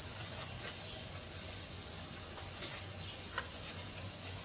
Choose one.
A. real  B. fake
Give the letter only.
B